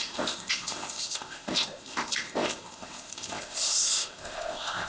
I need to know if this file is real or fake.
fake